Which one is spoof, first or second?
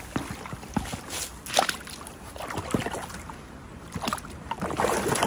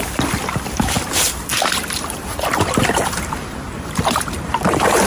second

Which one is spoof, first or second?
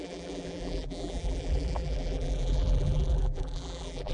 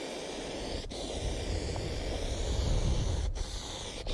first